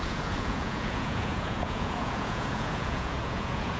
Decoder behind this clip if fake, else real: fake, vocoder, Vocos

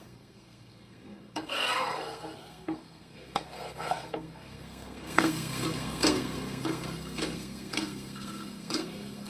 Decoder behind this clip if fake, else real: fake, codec, SNAC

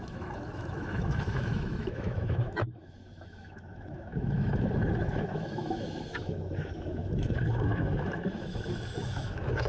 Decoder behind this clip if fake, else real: fake, autoencoder, DAC-VAE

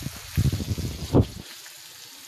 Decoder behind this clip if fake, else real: real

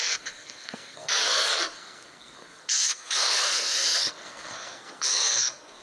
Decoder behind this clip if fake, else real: fake, codec, SNAC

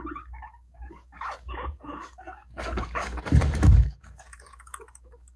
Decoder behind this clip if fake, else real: fake, codec, DAC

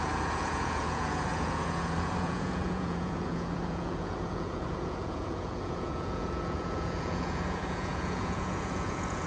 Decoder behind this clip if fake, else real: fake, vocoder, Vocos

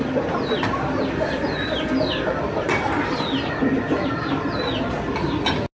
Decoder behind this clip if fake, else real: real